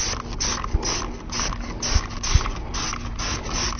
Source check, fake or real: real